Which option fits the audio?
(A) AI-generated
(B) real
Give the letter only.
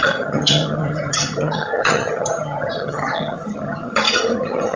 A